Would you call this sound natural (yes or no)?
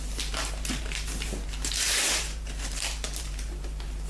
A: no